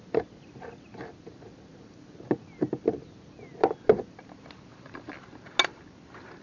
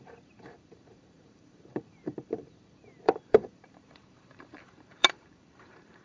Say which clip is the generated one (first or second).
second